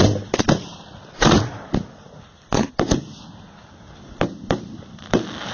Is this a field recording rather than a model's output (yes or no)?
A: yes